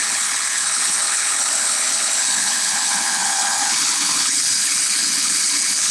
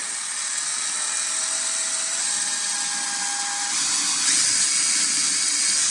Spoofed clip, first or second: first